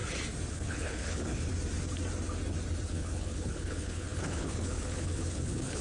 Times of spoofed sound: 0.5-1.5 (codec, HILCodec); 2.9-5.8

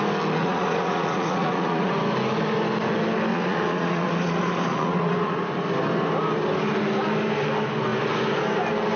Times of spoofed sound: 0.4-1.9 (vocoder, Vocos); 3.3-5.4

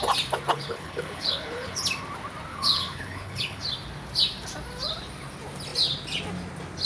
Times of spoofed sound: 0.5-1.8 (codec, HILCodec); 2.5-3.6

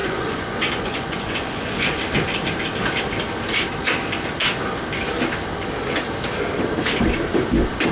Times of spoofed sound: 0.0-2.0 (vocoder, Vocos)

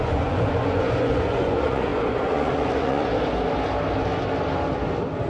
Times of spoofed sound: 0.0-3.1 (vocoder, Vocos)

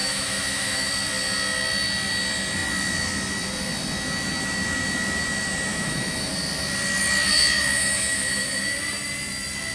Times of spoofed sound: 0.0-0.9 (autoencoder, DAC-VAE); 5.7-6.3; 7.3-8.6